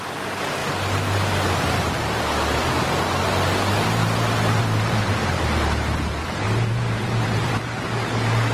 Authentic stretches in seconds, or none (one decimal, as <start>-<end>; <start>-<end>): 0.0-4.0; 7.6-8.5